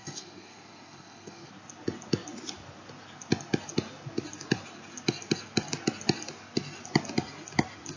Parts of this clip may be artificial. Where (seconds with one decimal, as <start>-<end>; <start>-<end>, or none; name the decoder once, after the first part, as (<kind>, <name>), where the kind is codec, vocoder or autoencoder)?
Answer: 0.0-1.5 (codec, SNAC)